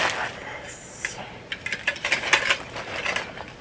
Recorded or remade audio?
recorded